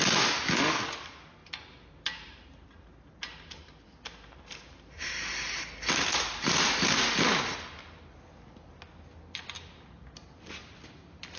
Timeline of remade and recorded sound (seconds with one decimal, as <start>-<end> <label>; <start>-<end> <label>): 0.0-1.4 recorded; 1.4-5.2 remade; 5.2-11.4 recorded